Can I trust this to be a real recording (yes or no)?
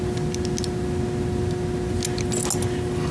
yes